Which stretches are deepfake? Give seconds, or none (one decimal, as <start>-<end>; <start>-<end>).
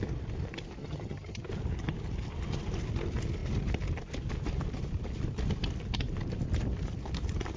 0.8-1.4